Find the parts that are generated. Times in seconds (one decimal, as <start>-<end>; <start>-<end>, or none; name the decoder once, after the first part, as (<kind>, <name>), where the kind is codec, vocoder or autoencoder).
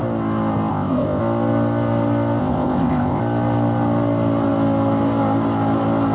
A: 0.7-1.2 (codec, ZipCodec); 2.4-3.2